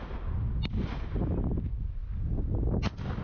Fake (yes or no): no